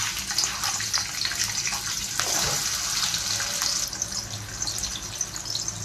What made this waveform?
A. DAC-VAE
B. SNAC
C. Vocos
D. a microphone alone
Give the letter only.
D